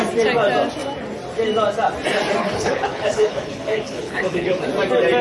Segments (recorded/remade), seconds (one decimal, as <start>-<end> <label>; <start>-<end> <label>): 0.0-2.4 recorded; 2.4-4.6 remade; 4.6-5.2 recorded